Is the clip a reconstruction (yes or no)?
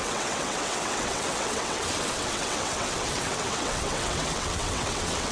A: yes